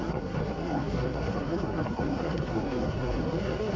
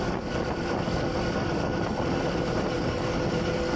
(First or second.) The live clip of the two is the second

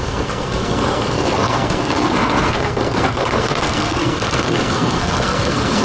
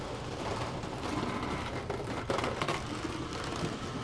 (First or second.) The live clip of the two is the second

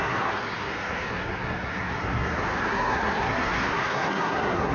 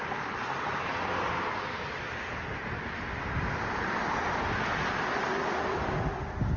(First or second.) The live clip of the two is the second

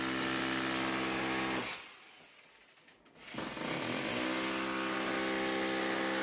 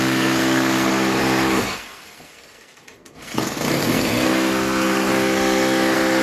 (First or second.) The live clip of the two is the first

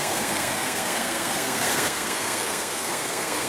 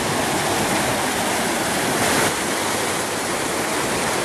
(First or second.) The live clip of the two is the second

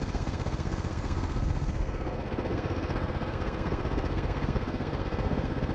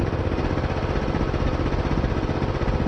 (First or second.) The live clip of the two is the second